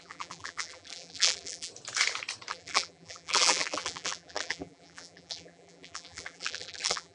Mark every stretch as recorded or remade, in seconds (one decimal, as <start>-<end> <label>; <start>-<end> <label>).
0.0-1.7 remade; 1.7-2.5 recorded; 2.5-7.1 remade